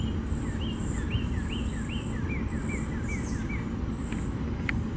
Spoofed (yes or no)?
no